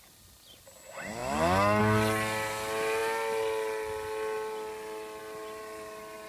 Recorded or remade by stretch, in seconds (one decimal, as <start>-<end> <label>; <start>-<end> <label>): 0.0-6.3 recorded